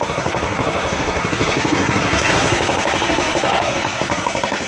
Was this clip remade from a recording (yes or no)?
yes